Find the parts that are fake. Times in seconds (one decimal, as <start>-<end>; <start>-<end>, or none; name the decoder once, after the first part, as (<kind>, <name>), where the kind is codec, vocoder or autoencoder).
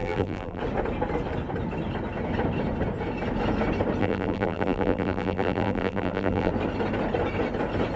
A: 0.0-0.6 (vocoder, BigVGAN v2); 4.0-6.5